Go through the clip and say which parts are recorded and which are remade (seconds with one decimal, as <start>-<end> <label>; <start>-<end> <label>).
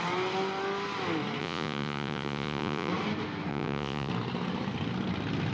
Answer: 0.0-1.4 recorded; 1.4-2.9 remade; 2.9-3.5 recorded; 3.5-4.1 remade; 4.1-5.5 recorded